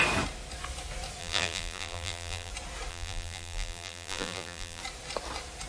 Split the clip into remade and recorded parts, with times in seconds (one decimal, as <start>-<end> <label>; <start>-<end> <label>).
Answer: 0.0-1.2 recorded; 1.2-2.5 remade; 2.5-2.9 recorded; 2.9-4.8 remade; 4.8-5.7 recorded